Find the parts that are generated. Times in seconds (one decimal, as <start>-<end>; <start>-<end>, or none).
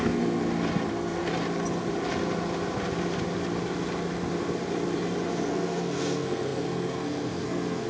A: 0.0-0.4; 0.9-1.3; 5.3-7.9